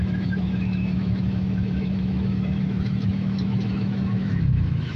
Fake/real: fake